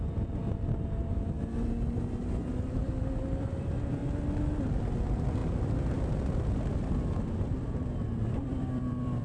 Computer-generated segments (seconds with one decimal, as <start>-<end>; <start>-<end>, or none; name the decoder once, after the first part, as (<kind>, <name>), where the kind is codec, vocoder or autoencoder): 2.5-4.0 (vocoder, BigVGAN v2); 4.8-9.2